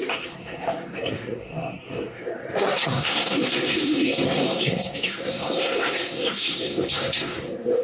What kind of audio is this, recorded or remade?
remade